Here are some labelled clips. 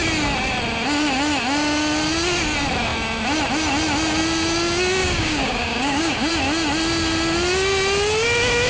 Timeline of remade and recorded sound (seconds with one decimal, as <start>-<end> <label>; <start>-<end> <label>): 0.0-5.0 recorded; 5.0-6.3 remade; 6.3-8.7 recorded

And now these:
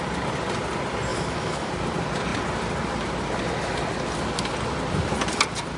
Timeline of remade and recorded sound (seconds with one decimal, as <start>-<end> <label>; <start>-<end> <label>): 0.0-1.1 recorded; 1.1-1.7 remade; 1.7-5.8 recorded

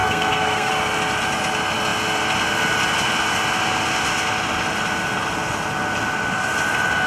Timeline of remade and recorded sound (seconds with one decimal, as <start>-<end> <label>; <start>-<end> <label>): 0.0-0.7 remade; 0.7-7.1 recorded

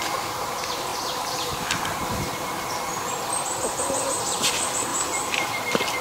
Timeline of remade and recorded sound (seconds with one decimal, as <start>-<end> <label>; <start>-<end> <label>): 0.0-0.9 recorded; 0.9-4.5 remade; 4.5-4.9 recorded; 4.9-6.0 remade

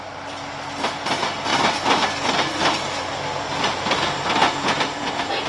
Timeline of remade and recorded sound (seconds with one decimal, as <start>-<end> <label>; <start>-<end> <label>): 0.0-4.4 recorded; 4.4-5.5 remade

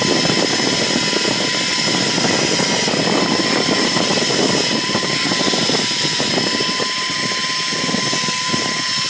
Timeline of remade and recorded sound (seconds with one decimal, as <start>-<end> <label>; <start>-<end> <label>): 0.0-1.7 recorded; 1.7-5.3 remade; 5.3-9.1 recorded

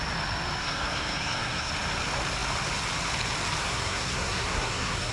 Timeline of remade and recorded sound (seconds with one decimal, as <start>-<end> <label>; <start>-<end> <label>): 0.0-0.6 recorded; 0.6-1.7 remade; 1.7-3.6 recorded; 3.6-5.1 remade

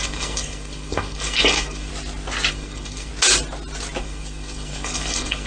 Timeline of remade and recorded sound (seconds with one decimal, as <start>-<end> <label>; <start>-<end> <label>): 0.0-1.9 remade; 1.9-2.5 recorded; 2.5-3.1 remade; 3.1-4.0 recorded; 4.0-5.5 remade